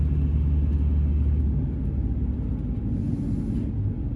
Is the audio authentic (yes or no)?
yes